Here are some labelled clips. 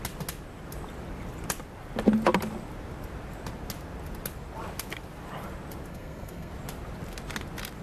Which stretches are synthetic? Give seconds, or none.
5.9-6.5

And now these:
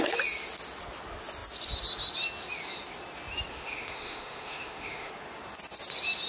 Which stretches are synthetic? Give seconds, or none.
3.5-5.1